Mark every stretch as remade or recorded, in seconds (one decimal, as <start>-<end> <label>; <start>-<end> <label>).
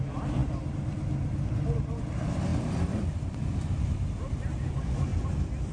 0.0-2.5 recorded; 2.5-4.4 remade; 4.4-5.7 recorded